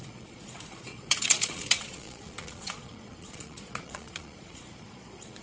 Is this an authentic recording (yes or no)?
no